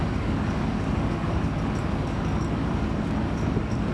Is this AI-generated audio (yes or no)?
yes